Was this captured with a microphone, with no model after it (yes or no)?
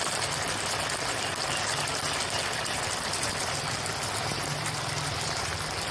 yes